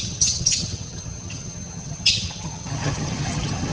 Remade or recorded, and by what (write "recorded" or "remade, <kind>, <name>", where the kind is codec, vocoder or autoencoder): remade, vocoder, HiFi-GAN